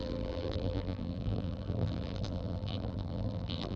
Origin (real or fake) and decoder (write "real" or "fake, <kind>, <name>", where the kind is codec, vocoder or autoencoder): fake, vocoder, BigVGAN v2